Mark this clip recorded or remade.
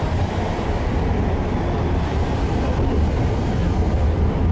recorded